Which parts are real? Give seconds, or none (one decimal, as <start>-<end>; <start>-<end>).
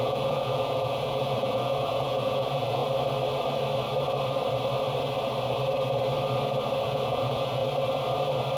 2.8-6.8; 7.6-8.6